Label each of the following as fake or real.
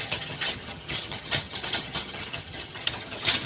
fake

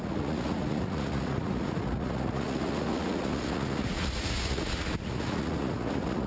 fake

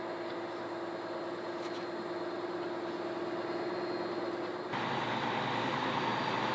real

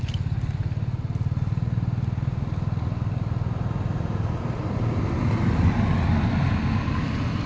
real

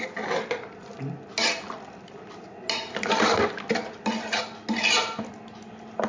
real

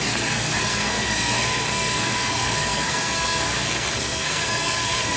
fake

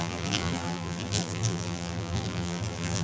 fake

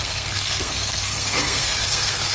fake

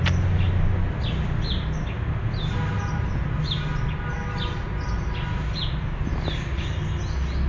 real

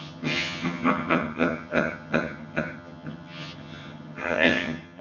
fake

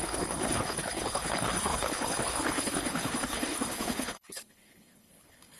fake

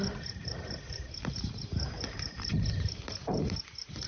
fake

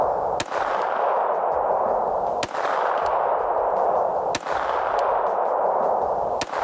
real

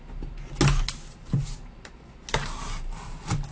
real